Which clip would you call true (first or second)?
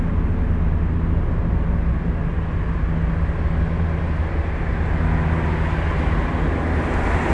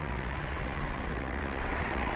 first